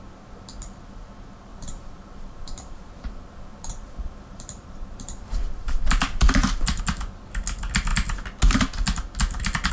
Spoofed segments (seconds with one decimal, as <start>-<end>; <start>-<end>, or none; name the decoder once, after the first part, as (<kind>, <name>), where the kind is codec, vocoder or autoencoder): 1.5-6.8 (vocoder, BigVGAN v2)